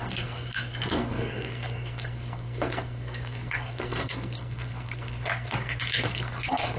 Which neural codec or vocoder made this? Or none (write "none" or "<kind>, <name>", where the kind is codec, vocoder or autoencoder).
codec, SNAC